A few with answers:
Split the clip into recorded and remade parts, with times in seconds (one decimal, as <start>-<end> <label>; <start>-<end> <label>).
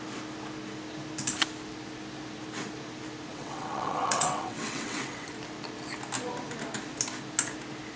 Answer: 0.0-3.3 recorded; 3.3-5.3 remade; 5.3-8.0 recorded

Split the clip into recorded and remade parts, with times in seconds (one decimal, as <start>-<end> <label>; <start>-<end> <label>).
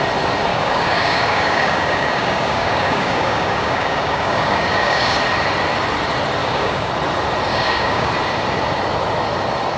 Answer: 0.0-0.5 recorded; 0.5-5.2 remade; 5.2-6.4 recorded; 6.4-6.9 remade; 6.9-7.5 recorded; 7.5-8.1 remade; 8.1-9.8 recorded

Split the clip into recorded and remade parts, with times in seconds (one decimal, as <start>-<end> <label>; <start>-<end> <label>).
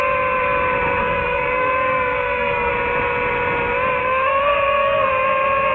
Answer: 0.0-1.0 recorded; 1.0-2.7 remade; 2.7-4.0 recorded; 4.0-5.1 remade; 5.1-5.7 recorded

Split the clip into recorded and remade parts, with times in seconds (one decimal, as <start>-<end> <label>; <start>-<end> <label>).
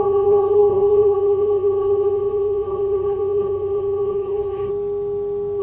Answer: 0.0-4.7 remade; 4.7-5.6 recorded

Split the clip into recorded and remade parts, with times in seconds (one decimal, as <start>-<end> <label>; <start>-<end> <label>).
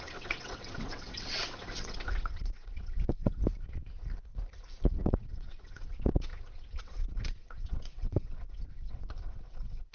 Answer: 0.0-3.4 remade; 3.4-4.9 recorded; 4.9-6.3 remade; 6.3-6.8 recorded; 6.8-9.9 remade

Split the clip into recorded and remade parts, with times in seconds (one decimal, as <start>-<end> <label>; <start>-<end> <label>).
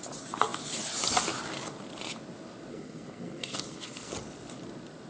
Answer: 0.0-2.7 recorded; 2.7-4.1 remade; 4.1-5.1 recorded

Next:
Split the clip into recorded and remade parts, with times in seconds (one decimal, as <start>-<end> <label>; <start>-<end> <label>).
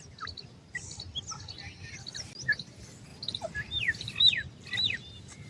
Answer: 0.0-5.5 recorded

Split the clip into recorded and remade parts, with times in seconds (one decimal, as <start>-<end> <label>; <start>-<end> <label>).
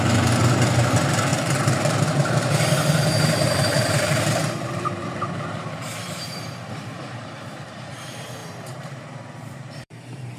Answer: 0.0-10.4 remade